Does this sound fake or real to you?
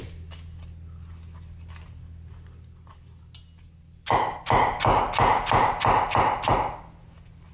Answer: real